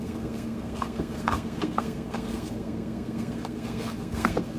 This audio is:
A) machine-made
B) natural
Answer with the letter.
A